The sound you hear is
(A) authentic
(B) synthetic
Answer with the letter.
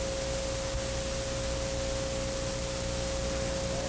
A